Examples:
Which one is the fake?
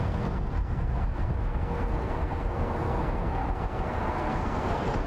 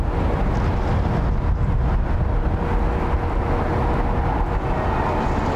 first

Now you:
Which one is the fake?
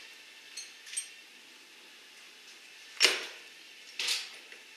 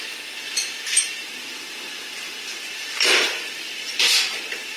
second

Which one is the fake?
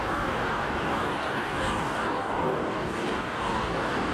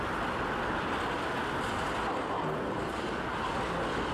first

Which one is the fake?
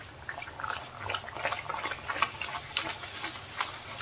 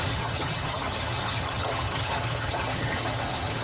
second